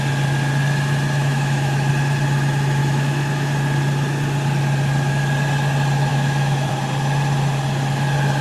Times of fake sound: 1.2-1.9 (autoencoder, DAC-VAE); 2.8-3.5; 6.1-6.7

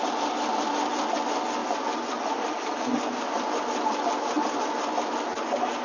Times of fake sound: none

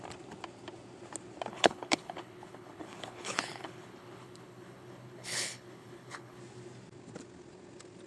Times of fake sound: 1.5-6.4 (codec, HILCodec)

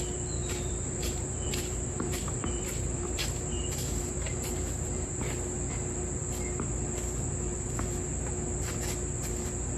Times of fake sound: 0.4-5.1 (vocoder, BigVGAN v2); 7.5-8.1

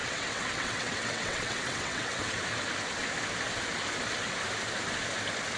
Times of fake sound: 0.0-2.4 (vocoder, WaveNeXt)

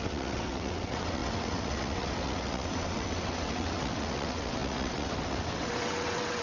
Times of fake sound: 0.0-6.4 (vocoder, WaveNeXt)

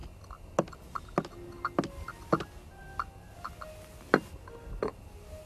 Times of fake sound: none

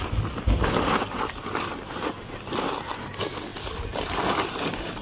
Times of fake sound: none